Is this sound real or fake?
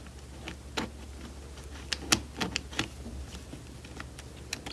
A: real